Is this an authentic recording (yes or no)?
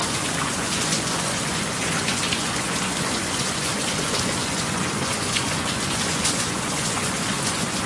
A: no